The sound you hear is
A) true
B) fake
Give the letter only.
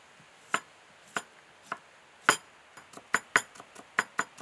A